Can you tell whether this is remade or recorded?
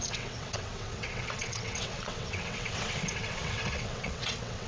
remade